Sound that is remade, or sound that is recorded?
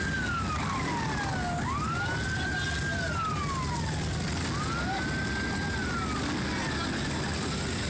recorded